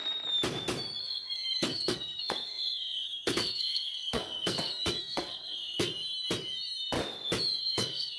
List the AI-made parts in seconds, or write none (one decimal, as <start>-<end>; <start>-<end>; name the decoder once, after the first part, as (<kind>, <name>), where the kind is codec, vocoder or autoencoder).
1.0-5.9 (codec, SNAC); 7.6-8.2